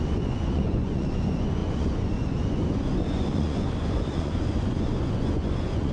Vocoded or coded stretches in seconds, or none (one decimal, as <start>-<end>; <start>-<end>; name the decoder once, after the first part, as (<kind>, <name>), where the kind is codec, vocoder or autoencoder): 0.0-5.9 (vocoder, Vocos)